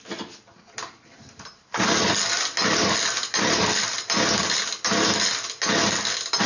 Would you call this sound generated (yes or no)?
no